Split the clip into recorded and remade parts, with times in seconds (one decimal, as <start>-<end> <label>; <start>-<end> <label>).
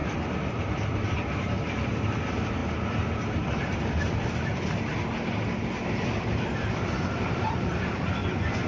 0.0-2.6 remade; 2.6-5.9 recorded; 5.9-8.7 remade